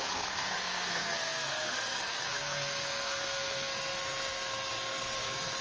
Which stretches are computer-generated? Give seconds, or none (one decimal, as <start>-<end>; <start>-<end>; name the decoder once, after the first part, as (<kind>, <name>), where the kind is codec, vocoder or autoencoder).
0.0-5.6 (codec, SNAC)